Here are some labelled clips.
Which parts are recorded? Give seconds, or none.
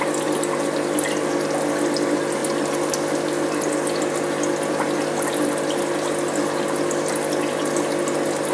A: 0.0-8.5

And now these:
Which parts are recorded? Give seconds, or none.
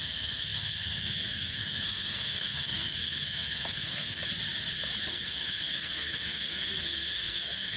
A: 4.2-5.1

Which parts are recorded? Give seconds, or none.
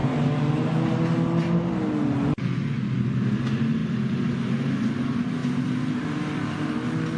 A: 0.0-7.2